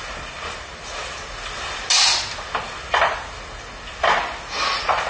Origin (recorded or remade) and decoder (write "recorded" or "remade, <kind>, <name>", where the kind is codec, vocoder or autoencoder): recorded